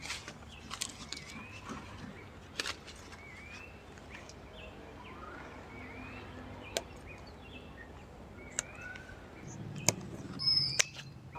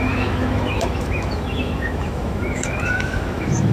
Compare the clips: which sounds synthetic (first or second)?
second